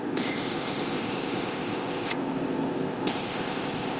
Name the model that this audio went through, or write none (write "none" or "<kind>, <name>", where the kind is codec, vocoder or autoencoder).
codec, ZipCodec